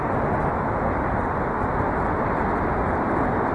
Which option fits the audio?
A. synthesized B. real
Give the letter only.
B